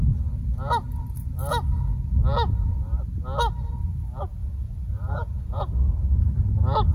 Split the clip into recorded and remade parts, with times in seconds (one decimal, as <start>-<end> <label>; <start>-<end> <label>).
0.0-4.4 recorded; 4.4-5.7 remade; 5.7-6.9 recorded